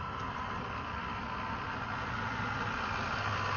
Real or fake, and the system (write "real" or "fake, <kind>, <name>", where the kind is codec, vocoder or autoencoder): real